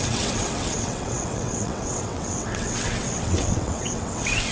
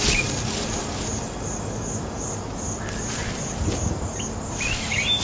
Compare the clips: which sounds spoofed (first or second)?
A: first